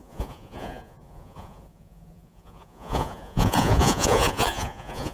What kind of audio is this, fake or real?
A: fake